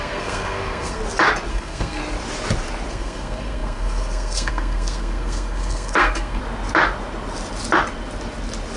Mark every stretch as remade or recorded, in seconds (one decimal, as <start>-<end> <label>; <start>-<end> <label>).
0.0-1.0 remade; 1.0-1.5 recorded; 1.5-2.0 remade; 2.0-2.9 recorded; 2.9-6.4 remade; 6.4-8.8 recorded